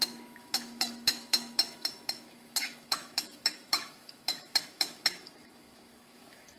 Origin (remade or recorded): remade